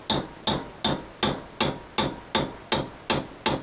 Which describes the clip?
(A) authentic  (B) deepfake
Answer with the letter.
A